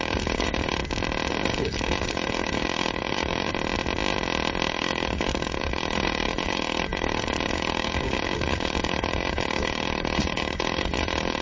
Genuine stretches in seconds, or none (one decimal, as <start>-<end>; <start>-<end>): 0.8-1.4; 3.5-4.7